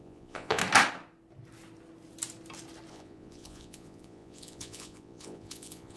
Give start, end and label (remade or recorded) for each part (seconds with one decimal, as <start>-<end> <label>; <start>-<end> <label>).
0.0-0.6 remade; 0.6-2.9 recorded; 2.9-6.0 remade